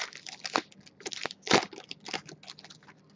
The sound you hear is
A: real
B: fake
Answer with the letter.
A